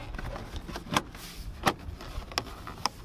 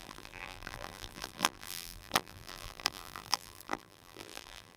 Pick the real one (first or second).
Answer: first